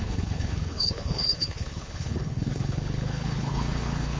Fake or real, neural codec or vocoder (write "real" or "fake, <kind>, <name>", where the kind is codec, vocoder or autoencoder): fake, codec, HILCodec